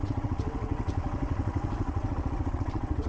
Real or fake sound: fake